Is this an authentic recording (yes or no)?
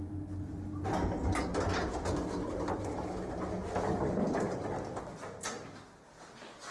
yes